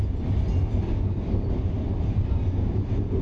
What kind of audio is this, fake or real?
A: real